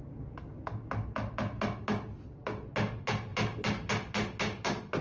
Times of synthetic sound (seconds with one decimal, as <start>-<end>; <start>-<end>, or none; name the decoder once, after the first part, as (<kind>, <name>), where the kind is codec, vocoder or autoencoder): none